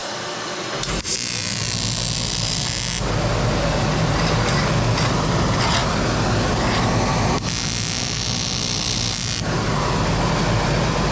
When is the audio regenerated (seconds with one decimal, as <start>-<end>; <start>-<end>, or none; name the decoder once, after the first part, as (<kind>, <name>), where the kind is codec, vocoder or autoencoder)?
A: none